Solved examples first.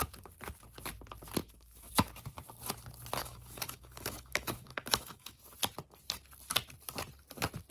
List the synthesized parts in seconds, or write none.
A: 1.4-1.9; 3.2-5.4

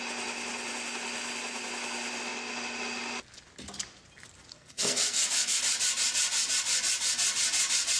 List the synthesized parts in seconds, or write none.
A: 4.5-5.6

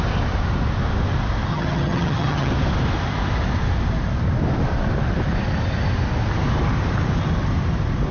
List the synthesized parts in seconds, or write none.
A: 1.5-2.5

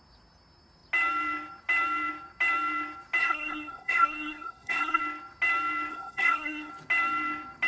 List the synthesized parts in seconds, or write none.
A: 3.2-5.0; 5.9-6.7

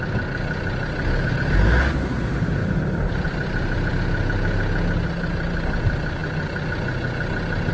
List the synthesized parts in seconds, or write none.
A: 2.6-4.0